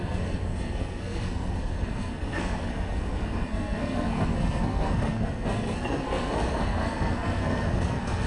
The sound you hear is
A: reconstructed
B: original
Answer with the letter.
A